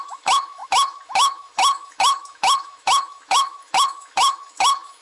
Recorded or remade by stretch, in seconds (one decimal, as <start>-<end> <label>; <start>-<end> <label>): 0.0-5.0 remade